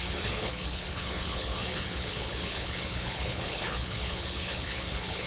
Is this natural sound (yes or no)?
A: no